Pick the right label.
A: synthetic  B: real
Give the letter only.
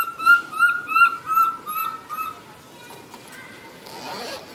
B